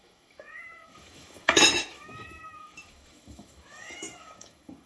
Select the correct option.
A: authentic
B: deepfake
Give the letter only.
B